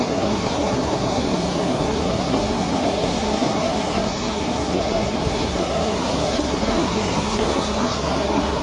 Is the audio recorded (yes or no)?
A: no